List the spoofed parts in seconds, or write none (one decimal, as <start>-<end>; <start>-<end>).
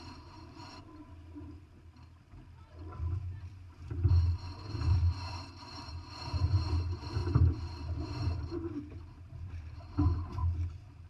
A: 0.0-0.6; 3.4-10.4